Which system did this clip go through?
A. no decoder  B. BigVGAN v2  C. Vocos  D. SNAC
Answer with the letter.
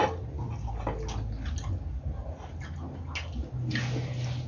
A